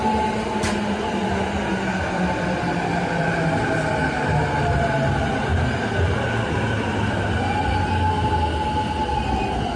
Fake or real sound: real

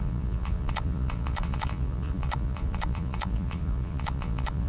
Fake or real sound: fake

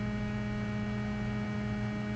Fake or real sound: real